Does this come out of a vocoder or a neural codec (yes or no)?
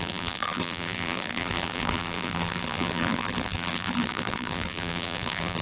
yes